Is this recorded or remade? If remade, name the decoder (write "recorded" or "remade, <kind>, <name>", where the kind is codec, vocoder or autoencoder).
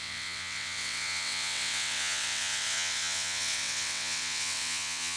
remade, vocoder, WaveNeXt